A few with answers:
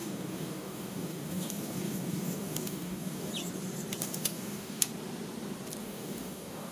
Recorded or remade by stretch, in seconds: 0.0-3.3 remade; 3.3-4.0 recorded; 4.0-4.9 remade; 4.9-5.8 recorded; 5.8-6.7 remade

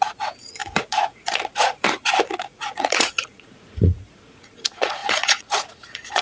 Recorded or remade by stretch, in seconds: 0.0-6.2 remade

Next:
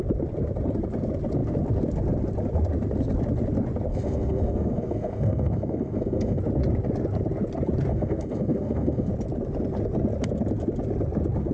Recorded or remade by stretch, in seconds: 0.0-3.9 recorded; 3.9-6.4 remade; 6.4-7.9 recorded; 7.9-9.1 remade; 9.1-11.5 recorded

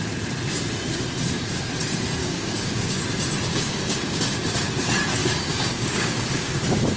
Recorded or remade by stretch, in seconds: 0.0-2.2 recorded; 2.2-3.0 remade; 3.0-3.5 recorded; 3.5-4.2 remade; 4.2-5.2 recorded; 5.2-6.6 remade; 6.6-7.0 recorded

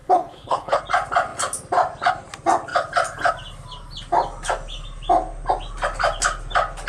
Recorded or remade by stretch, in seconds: 0.0-0.8 remade; 0.8-6.9 recorded

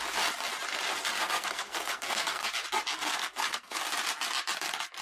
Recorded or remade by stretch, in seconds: 0.0-1.2 recorded; 1.2-2.5 remade; 2.5-2.9 recorded; 2.9-3.8 remade; 3.8-5.0 recorded